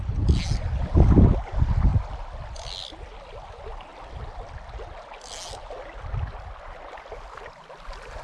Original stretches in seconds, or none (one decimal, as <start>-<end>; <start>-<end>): 0.0-8.2